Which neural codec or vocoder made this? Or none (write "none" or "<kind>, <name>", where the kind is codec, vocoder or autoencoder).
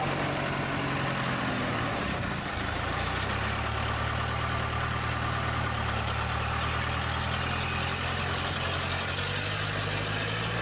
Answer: none